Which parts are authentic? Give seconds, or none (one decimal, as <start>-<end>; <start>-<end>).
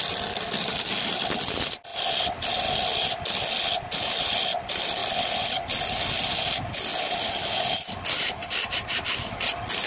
0.0-9.9